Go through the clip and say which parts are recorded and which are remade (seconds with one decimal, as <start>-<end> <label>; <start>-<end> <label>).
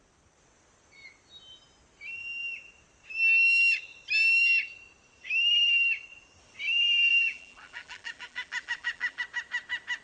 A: 0.0-7.1 recorded; 7.1-9.2 remade; 9.2-10.0 recorded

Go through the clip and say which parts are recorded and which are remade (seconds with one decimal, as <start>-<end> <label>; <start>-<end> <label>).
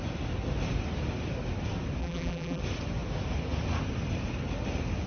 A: 0.0-2.0 recorded; 2.0-2.6 remade; 2.6-5.1 recorded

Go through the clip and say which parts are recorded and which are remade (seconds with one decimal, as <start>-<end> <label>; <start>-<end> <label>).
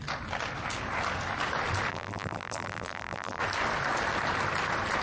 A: 0.0-1.9 recorded; 1.9-3.4 remade; 3.4-5.0 recorded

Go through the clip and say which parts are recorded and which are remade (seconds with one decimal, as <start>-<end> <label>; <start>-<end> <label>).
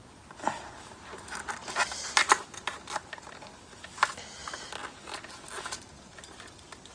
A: 0.0-6.9 recorded